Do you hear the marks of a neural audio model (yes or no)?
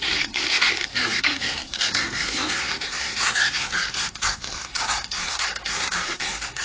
yes